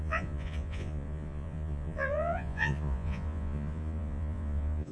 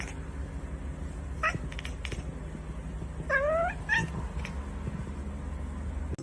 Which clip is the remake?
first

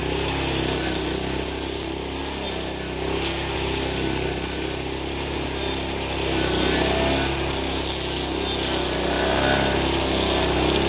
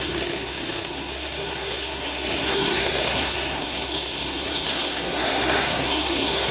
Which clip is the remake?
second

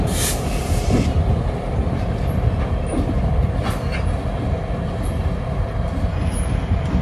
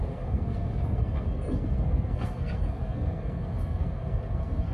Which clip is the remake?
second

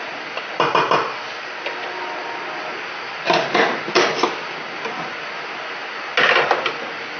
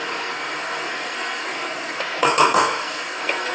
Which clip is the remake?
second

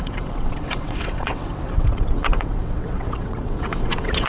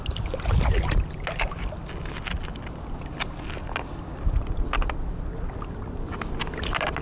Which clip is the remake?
first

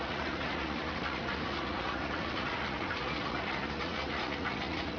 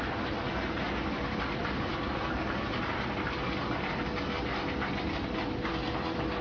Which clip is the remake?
first